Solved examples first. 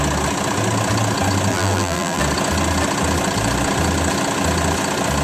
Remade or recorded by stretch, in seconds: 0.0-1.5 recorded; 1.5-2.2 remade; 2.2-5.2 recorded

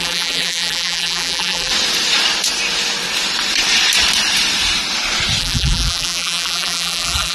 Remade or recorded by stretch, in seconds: 0.0-1.7 remade; 1.7-5.4 recorded; 5.4-7.3 remade